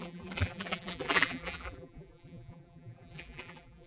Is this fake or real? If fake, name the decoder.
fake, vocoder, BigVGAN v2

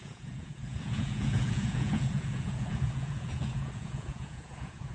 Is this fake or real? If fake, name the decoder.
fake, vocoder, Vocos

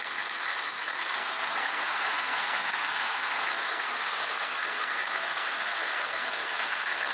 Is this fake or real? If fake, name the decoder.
fake, codec, SNAC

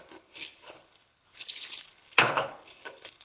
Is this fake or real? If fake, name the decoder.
fake, codec, HILCodec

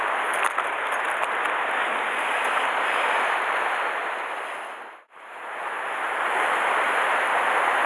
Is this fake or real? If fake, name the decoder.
real